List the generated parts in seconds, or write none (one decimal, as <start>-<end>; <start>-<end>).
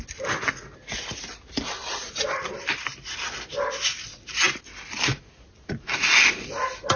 none